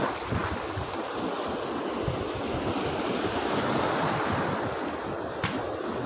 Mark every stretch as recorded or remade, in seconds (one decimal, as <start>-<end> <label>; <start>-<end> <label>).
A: 0.0-0.4 recorded; 0.4-4.1 remade; 4.1-6.1 recorded